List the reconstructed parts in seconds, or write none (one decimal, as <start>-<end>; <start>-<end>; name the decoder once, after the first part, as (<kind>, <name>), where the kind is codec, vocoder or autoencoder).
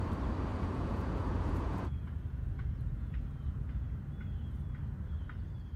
0.5-4.0 (vocoder, Vocos)